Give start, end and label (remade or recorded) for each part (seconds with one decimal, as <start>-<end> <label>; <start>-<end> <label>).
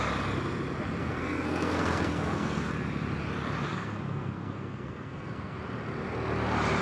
0.0-1.0 recorded; 1.0-2.7 remade; 2.7-3.7 recorded; 3.7-5.6 remade; 5.6-6.8 recorded